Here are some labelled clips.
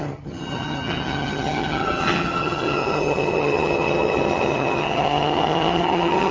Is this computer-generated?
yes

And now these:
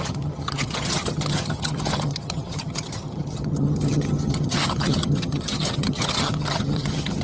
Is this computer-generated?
yes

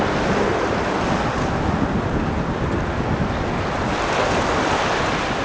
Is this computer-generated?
no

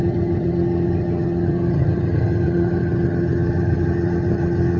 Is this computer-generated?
yes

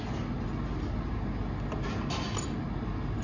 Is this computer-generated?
no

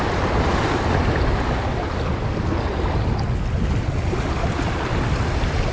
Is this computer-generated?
no